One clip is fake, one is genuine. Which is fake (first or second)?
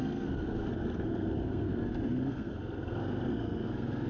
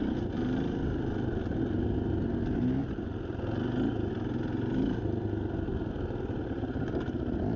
first